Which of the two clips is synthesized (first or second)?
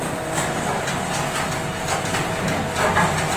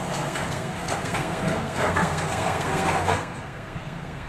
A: second